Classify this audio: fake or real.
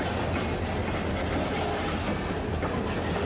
real